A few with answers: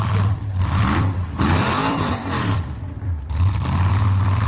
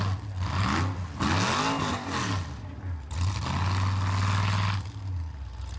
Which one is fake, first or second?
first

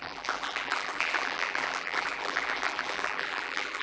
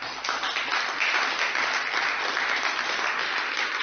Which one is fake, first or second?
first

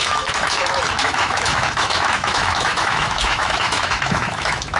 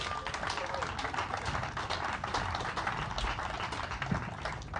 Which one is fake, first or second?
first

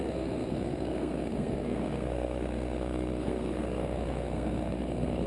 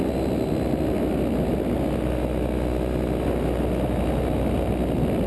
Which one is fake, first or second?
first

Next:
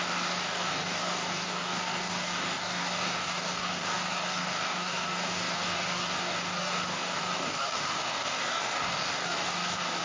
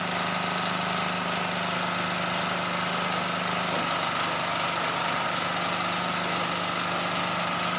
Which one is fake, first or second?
first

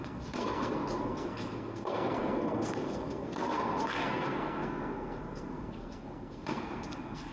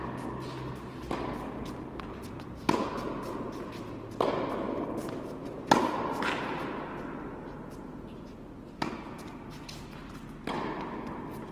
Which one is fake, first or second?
first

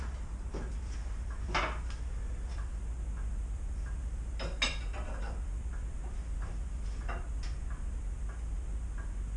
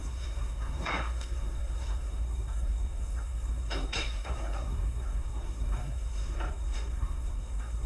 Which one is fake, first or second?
second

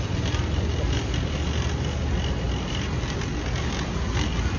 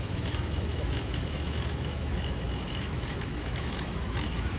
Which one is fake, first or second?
second